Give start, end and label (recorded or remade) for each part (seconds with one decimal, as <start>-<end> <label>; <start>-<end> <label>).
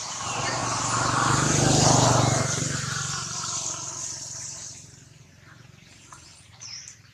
0.0-0.6 remade; 0.6-4.0 recorded; 4.0-7.1 remade